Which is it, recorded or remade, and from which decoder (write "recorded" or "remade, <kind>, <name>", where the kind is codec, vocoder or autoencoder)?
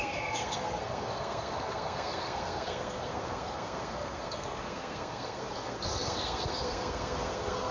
remade, codec, SNAC